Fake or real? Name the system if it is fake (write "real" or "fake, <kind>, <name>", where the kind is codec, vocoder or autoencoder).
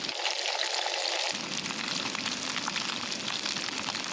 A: real